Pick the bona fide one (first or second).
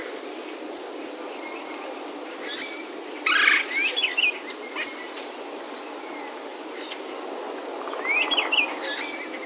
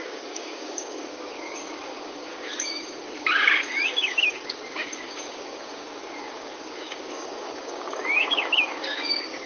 first